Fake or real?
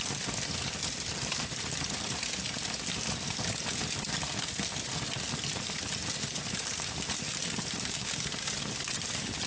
real